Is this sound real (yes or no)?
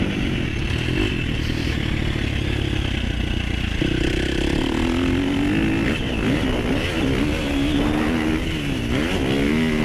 yes